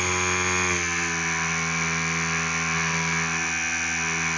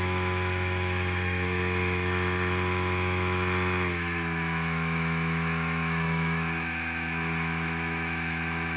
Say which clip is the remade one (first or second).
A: second